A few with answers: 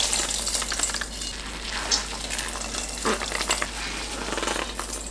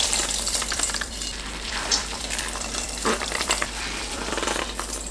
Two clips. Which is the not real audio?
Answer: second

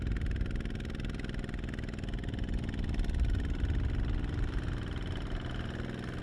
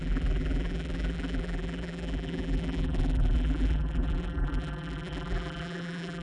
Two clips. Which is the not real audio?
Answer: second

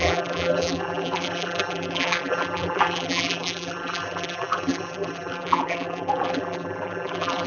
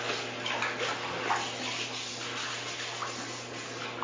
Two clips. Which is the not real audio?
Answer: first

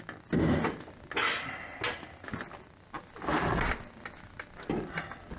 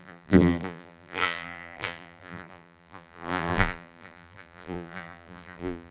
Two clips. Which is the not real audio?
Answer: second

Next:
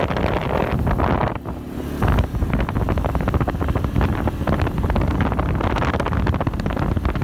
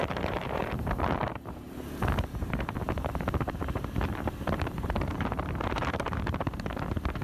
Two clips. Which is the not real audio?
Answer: second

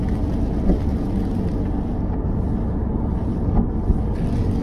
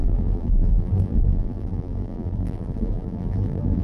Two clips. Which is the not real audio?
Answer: second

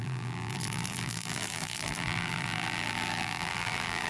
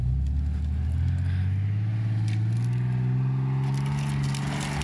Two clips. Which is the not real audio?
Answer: first